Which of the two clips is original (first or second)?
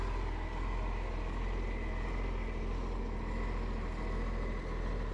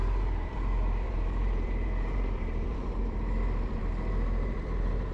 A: first